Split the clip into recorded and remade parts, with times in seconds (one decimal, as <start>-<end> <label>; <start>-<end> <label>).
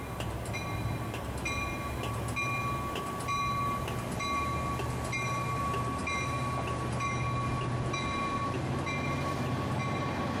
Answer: 0.0-10.4 recorded